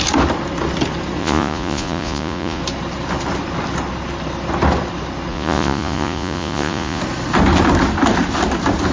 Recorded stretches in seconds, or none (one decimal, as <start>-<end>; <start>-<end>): 0.0-1.2; 2.6-5.3; 7.0-8.9